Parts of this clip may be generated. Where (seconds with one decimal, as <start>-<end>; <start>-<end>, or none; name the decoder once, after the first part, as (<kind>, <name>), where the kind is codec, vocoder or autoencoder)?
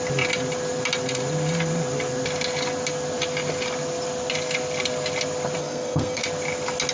5.6-6.2 (codec, SNAC)